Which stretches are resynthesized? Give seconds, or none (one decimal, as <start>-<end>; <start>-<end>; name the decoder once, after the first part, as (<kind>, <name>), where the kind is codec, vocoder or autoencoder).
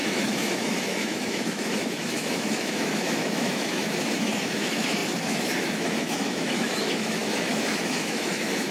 0.0-8.7 (autoencoder, DAC-VAE)